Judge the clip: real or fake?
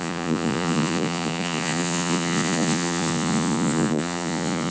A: fake